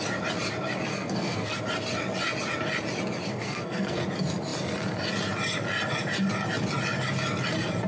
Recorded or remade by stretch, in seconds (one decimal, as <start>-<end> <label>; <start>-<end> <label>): 0.0-0.9 recorded; 0.9-1.6 remade; 1.6-3.3 recorded; 3.3-4.0 remade; 4.0-7.9 recorded